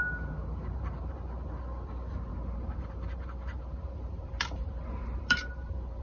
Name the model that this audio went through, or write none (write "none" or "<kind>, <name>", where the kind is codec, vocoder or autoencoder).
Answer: vocoder, BigVGAN v2